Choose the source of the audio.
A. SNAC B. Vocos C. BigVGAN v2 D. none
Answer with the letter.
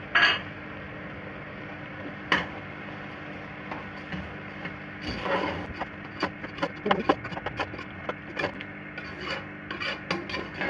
D